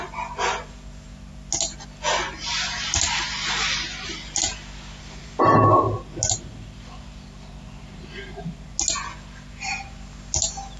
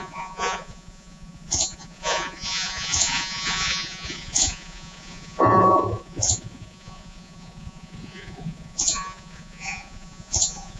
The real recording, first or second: first